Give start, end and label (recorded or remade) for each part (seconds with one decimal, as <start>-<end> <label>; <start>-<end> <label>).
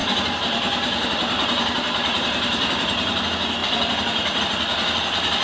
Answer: 0.0-3.2 remade; 3.2-3.6 recorded; 3.6-4.4 remade; 4.4-5.4 recorded